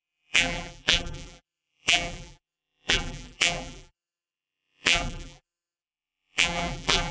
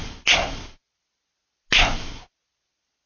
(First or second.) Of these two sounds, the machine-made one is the first